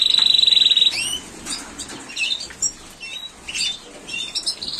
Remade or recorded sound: recorded